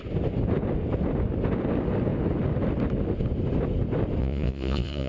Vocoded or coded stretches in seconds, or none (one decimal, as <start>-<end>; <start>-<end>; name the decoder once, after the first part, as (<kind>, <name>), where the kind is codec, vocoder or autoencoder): 4.2-5.1 (vocoder, Vocos)